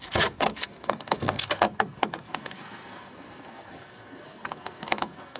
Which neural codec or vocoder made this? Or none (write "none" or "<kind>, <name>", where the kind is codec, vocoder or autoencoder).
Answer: codec, SNAC